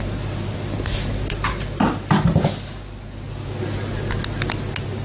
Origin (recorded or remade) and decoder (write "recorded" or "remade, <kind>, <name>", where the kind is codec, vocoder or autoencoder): recorded